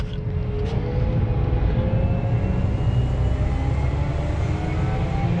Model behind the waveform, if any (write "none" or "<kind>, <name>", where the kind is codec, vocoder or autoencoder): none